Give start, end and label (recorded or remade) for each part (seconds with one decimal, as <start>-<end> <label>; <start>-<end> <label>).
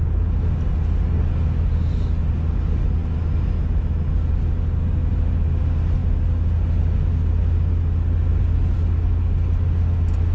0.0-10.3 recorded